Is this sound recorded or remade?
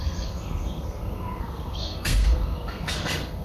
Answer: remade